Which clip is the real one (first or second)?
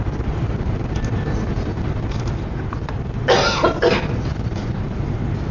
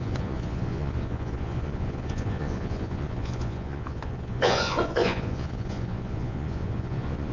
first